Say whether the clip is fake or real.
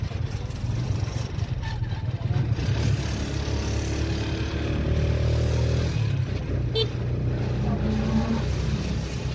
real